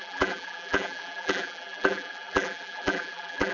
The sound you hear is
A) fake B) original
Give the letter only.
A